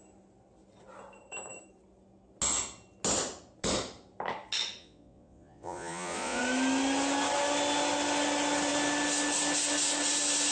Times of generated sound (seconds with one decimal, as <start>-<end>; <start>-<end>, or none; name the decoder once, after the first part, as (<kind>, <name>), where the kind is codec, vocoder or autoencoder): 4.8-6.4 (vocoder, Vocos)